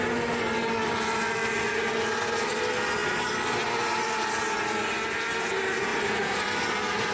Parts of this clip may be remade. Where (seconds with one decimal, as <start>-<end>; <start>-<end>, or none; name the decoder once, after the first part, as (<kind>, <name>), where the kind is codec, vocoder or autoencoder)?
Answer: 5.9-6.4 (vocoder, Vocos)